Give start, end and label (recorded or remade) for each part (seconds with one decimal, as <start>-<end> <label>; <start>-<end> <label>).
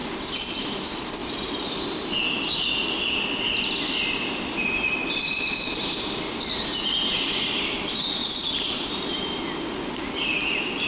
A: 0.0-1.2 recorded; 1.2-2.0 remade; 2.0-8.2 recorded; 8.2-9.1 remade; 9.1-10.9 recorded